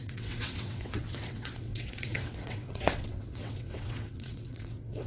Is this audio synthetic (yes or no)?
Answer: yes